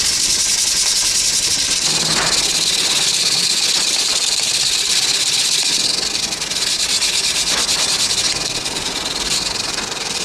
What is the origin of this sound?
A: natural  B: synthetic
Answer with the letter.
A